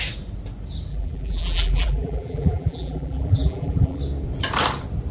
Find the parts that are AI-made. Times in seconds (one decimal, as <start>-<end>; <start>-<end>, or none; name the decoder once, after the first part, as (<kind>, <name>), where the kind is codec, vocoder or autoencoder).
0.9-4.0 (vocoder, BigVGAN v2)

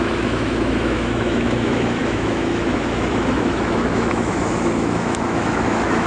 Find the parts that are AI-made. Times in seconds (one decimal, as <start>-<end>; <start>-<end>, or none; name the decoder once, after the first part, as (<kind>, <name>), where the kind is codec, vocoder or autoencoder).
0.0-6.1 (autoencoder, DAC-VAE)

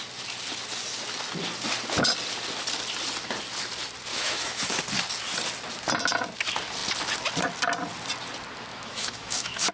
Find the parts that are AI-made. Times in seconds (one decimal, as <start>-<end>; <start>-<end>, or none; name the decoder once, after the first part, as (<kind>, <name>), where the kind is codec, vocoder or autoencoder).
4.1-4.8 (autoencoder, DAC-VAE); 8.7-9.7

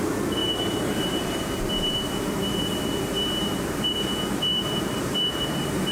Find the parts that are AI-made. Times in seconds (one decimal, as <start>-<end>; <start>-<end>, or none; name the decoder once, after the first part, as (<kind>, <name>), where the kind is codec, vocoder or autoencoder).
0.4-3.9 (vocoder, BigVGAN v2); 4.5-5.9